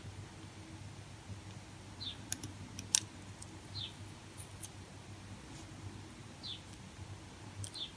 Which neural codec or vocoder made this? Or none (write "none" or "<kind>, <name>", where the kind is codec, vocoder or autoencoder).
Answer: none